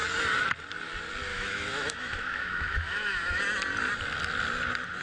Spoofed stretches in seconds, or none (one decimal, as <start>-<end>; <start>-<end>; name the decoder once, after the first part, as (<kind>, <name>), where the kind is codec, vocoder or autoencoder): 1.3-3.4 (autoencoder, DAC-VAE)